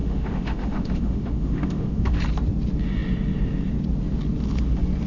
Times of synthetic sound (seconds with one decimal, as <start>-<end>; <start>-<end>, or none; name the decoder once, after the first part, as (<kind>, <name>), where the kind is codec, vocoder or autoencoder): 0.0-2.2 (autoencoder, DAC-VAE)